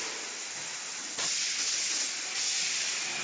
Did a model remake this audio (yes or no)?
no